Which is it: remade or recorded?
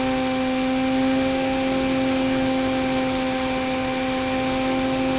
recorded